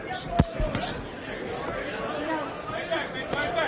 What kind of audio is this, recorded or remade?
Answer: recorded